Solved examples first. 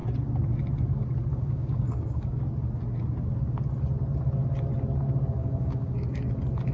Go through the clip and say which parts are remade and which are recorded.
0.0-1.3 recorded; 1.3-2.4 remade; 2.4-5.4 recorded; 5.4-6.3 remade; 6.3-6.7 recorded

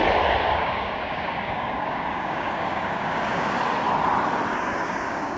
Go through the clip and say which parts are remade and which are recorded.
0.0-0.4 recorded; 0.4-3.6 remade; 3.6-4.5 recorded; 4.5-5.4 remade